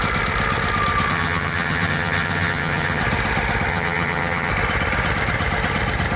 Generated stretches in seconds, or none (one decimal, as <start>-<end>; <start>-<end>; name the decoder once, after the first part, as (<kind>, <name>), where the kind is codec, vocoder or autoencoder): 1.1-3.0 (vocoder, HiFi-GAN); 3.7-4.5